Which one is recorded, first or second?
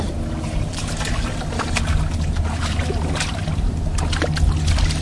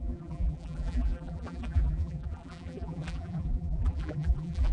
first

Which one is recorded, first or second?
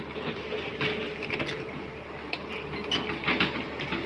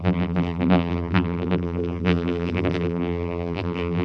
first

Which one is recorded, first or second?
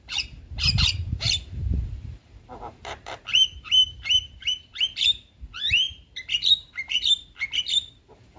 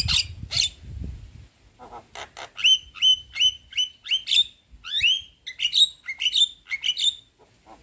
second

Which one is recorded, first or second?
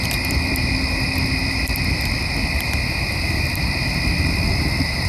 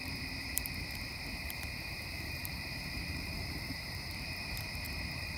first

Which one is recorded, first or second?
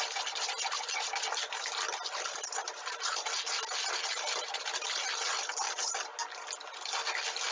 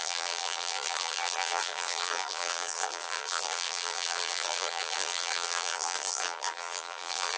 first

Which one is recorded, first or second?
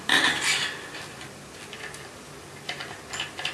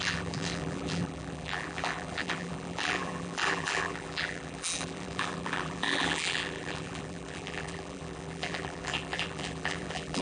first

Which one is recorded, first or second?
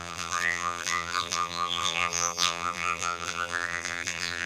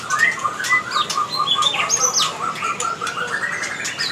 second